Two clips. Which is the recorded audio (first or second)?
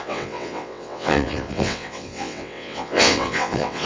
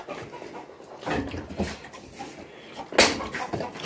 second